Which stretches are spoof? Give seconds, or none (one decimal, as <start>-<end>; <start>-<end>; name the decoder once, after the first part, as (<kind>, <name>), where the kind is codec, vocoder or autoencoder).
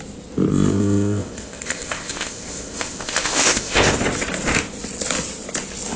0.5-3.9 (codec, ZipCodec)